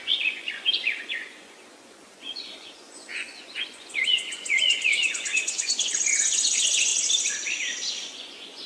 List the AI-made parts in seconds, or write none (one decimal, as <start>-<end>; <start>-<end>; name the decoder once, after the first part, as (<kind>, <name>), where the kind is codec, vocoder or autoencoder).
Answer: 0.0-6.9 (vocoder, Vocos); 7.9-8.7